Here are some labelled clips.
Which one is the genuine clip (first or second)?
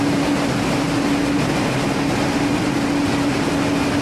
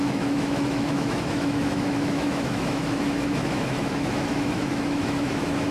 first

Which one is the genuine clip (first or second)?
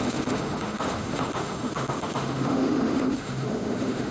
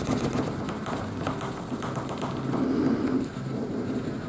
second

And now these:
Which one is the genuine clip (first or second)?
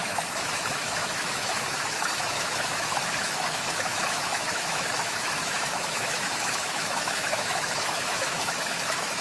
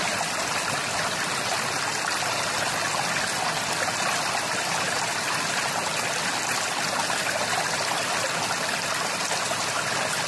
second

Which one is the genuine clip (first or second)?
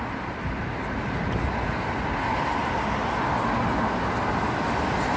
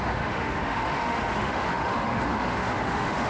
first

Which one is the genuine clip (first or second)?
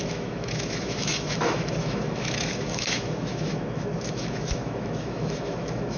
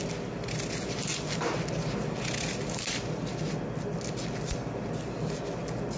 second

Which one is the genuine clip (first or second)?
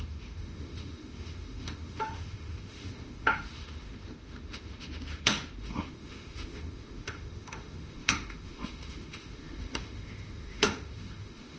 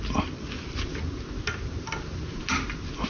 second